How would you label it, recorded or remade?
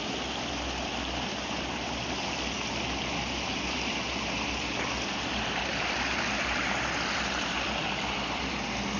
recorded